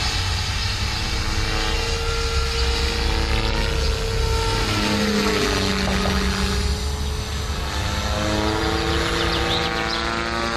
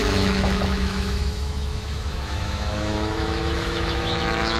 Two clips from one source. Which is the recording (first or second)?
first